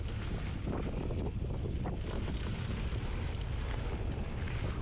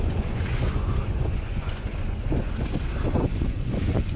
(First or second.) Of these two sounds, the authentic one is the first